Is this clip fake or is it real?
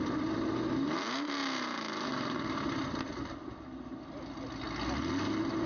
real